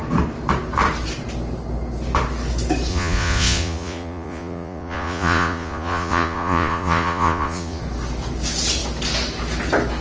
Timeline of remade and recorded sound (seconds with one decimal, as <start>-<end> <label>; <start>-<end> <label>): 0.0-2.9 recorded; 2.9-7.8 remade; 7.8-10.0 recorded